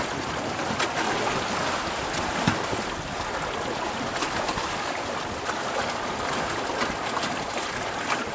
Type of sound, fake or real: real